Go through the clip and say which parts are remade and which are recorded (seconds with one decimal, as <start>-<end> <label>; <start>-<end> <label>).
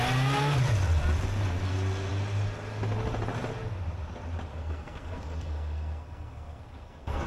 0.0-4.5 recorded; 4.5-7.3 remade